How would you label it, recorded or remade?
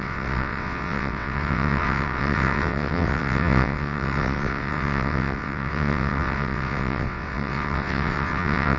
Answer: remade